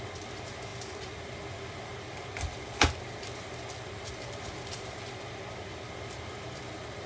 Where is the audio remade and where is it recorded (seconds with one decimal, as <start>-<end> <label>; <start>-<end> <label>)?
0.0-7.1 recorded